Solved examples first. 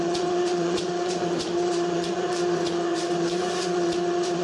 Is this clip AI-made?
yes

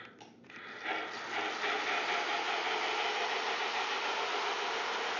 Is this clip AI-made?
no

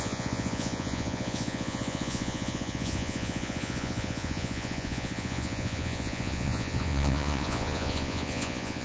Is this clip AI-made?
yes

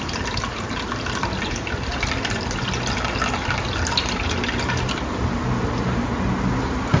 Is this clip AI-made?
no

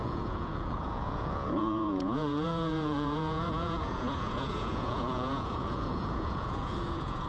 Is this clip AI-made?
yes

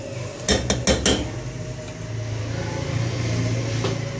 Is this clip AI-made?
no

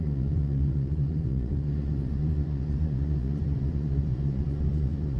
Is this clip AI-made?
yes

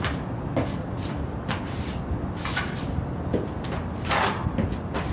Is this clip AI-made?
no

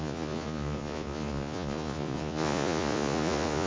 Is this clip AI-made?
yes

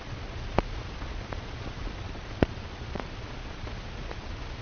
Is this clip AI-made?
yes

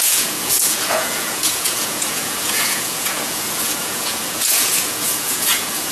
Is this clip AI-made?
yes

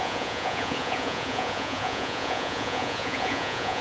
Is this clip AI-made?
yes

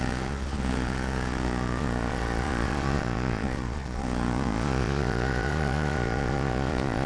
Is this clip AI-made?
yes